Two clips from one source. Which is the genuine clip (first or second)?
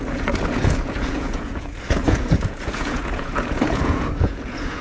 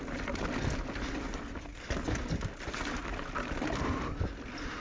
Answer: second